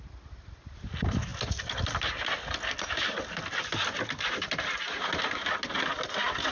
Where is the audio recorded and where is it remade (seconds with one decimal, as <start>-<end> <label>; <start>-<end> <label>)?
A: 0.0-6.5 recorded